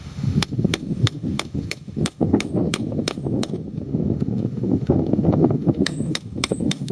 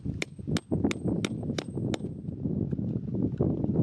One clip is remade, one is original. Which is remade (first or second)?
first